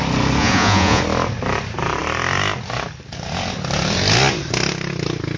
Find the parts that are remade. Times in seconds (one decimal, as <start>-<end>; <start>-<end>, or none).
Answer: 0.4-1.0